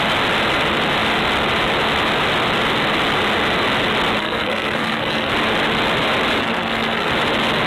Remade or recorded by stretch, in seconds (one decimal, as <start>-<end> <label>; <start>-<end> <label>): 0.0-4.2 recorded; 4.2-5.3 remade; 5.3-6.4 recorded; 6.4-7.1 remade; 7.1-7.7 recorded